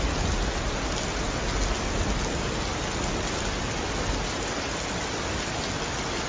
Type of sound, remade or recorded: recorded